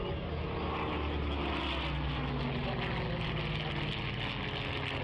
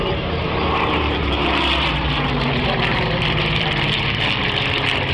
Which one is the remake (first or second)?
second